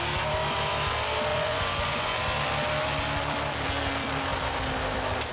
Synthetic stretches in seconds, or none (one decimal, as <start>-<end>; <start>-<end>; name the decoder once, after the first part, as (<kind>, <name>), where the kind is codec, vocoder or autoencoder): 1.3-2.2 (vocoder, Vocos)